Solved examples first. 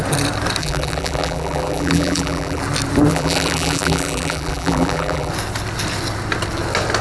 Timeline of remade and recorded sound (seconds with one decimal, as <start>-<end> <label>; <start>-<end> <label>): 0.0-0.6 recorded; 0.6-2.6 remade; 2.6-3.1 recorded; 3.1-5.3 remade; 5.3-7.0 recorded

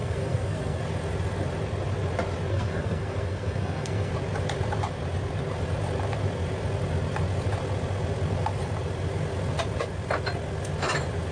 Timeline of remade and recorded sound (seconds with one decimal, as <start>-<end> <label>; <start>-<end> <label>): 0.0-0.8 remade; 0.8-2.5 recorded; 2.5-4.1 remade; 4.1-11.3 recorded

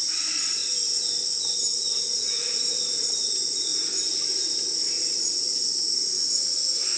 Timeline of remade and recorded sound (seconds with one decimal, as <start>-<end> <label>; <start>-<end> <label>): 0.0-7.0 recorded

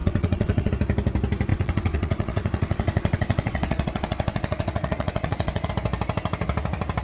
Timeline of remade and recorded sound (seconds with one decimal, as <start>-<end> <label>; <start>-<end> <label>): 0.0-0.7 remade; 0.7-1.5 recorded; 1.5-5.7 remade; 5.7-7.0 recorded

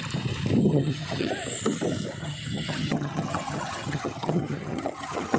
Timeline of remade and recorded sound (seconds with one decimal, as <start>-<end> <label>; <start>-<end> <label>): 0.0-0.6 recorded; 0.6-1.3 remade; 1.3-2.2 recorded; 2.2-5.4 remade

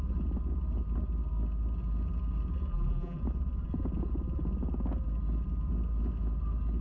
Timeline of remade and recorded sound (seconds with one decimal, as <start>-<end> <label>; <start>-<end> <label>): 0.0-2.7 recorded; 2.7-3.2 remade; 3.2-6.8 recorded